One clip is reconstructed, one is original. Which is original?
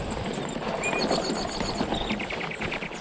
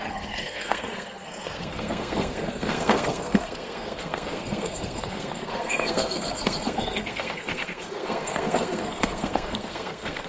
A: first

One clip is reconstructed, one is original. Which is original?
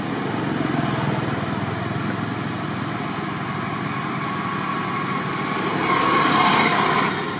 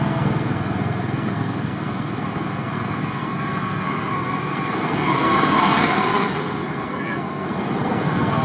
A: first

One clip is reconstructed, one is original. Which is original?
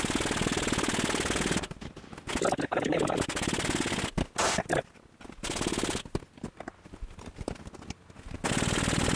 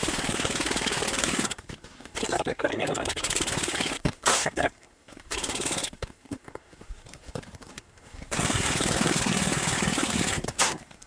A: first